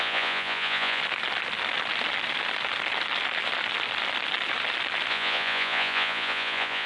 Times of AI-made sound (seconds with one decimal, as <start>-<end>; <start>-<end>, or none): 0.0-1.0; 5.1-6.9